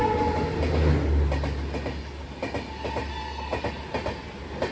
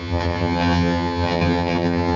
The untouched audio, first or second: first